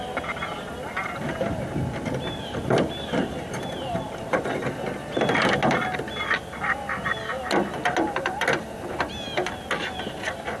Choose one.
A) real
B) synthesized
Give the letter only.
A